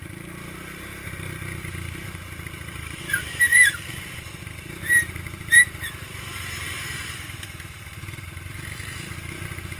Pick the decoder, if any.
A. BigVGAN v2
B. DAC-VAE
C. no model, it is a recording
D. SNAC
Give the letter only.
A